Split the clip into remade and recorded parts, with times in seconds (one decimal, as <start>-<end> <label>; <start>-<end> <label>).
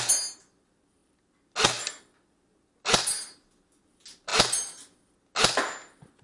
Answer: 0.0-6.2 recorded